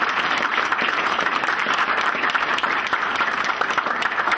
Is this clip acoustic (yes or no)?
no